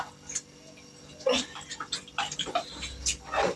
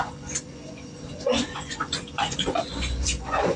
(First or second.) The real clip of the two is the first